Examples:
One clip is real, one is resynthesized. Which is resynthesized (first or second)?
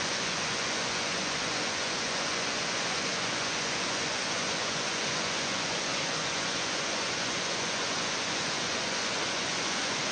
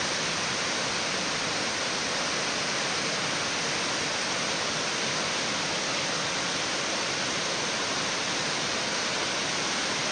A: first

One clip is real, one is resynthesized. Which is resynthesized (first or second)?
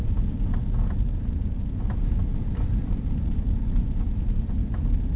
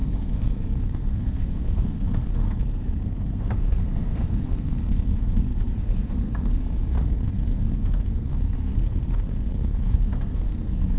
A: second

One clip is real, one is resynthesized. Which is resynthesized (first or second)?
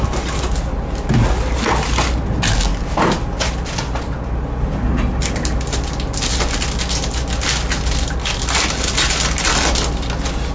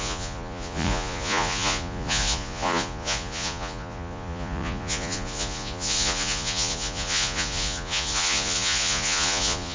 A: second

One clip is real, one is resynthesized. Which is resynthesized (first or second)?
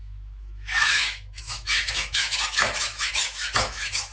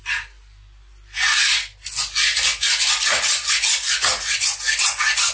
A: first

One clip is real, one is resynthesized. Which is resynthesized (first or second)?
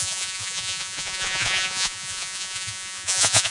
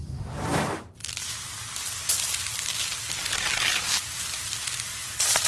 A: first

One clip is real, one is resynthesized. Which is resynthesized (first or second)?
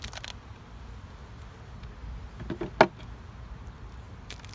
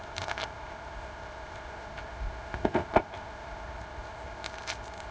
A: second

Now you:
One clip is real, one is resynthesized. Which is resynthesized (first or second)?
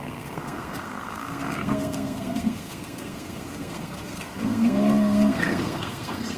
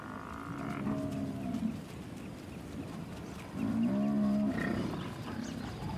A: first